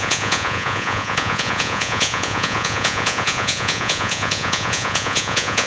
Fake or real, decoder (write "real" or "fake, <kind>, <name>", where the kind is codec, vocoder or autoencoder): fake, vocoder, Vocos